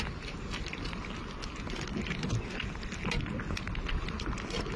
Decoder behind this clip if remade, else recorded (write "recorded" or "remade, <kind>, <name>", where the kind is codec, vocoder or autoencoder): recorded